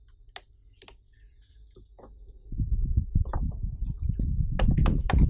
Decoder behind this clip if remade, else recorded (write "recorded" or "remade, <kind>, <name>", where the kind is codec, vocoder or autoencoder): recorded